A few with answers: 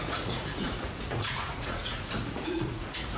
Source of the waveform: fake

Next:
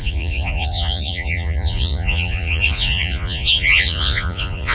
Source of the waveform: fake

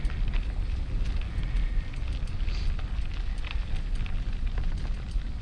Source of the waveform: real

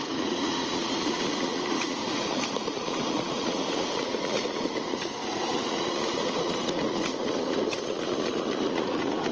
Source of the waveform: fake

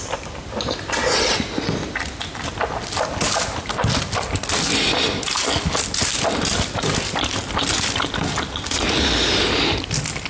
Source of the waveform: real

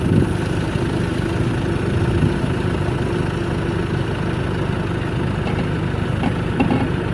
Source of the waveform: real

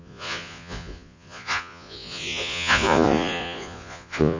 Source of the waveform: fake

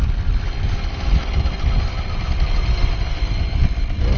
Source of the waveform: real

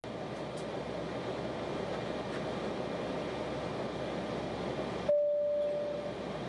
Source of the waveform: real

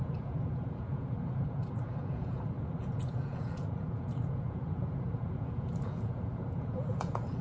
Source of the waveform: fake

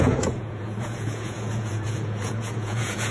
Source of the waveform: fake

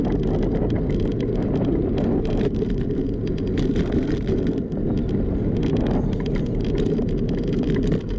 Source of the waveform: real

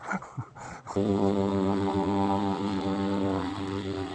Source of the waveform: fake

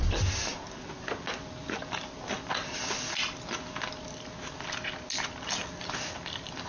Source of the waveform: real